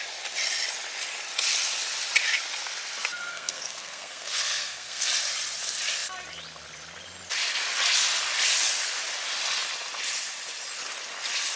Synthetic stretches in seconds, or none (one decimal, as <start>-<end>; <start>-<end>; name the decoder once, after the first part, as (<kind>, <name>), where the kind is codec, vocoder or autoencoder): 3.3-5.1 (codec, SNAC)